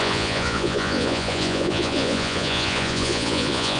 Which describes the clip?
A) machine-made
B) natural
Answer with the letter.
A